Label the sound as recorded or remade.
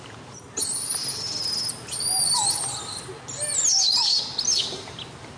recorded